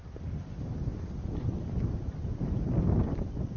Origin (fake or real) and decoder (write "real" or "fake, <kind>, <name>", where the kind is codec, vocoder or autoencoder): real